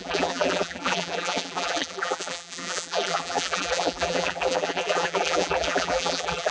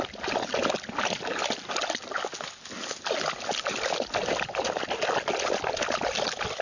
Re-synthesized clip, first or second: first